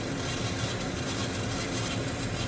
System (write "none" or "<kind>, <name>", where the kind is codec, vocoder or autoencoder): none